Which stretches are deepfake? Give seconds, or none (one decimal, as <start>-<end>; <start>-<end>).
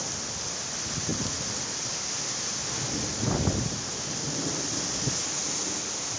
none